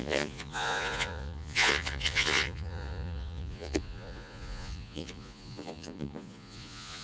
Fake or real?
fake